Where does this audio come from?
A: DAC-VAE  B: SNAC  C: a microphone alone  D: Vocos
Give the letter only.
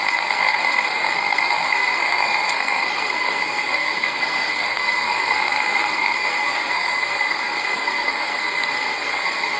B